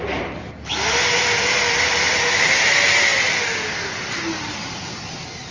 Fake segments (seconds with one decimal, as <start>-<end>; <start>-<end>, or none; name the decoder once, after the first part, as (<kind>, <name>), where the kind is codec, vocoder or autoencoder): none